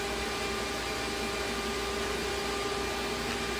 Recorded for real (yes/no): yes